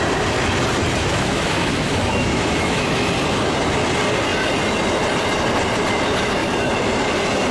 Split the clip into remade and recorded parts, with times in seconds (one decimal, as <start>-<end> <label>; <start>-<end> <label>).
0.0-1.0 recorded; 1.0-3.1 remade; 3.1-7.5 recorded